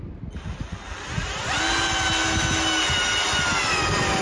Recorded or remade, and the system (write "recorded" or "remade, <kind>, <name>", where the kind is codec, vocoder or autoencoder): recorded